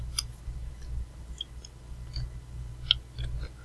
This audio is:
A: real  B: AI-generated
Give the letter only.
A